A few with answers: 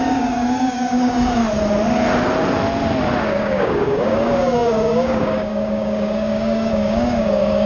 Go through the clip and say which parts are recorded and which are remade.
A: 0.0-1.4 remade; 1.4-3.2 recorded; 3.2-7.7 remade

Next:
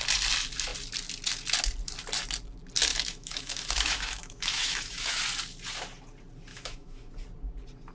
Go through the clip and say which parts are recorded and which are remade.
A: 0.0-2.9 recorded; 2.9-5.2 remade; 5.2-6.5 recorded; 6.5-7.1 remade; 7.1-7.9 recorded

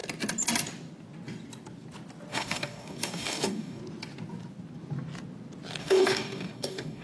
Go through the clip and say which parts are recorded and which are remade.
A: 0.0-2.3 recorded; 2.3-3.8 remade; 3.8-5.8 recorded; 5.8-7.0 remade